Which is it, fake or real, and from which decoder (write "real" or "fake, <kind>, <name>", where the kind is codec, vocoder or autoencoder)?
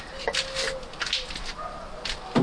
real